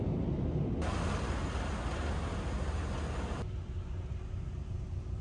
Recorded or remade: recorded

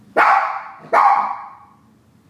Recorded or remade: recorded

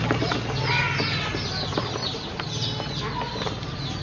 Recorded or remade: recorded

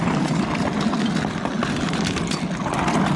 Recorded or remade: recorded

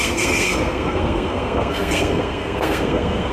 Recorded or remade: remade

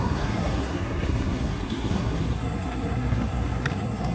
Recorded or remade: remade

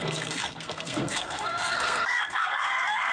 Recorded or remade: remade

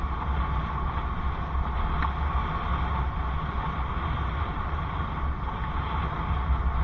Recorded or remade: recorded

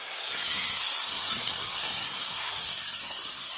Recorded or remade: remade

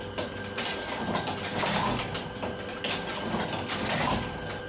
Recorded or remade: recorded